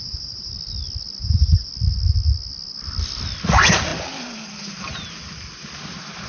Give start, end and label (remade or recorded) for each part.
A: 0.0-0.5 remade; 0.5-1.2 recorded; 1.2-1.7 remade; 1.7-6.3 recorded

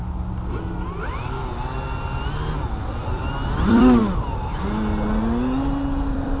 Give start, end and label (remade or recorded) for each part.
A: 0.0-3.0 recorded; 3.0-4.0 remade; 4.0-6.0 recorded; 6.0-6.4 remade

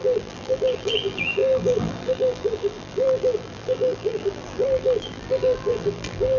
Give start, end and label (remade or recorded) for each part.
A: 0.0-6.4 remade

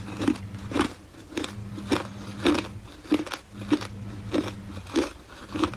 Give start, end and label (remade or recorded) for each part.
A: 0.0-1.6 remade; 1.6-5.0 recorded; 5.0-5.8 remade